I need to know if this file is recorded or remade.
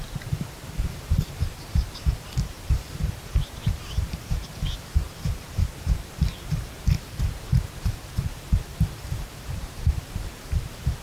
remade